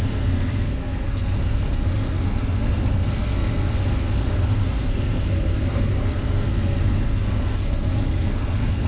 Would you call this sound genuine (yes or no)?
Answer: no